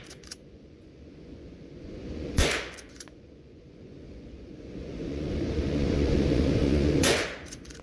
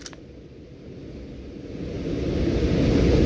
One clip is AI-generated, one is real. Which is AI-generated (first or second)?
first